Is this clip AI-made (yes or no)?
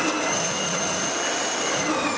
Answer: no